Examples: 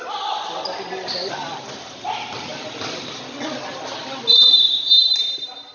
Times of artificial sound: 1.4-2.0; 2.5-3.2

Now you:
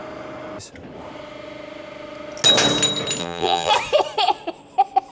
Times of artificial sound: 3.2-3.7

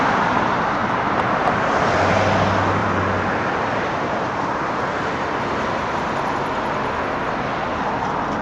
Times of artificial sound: 0.8-2.3; 2.8-5.4

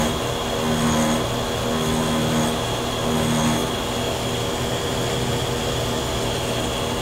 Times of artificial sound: none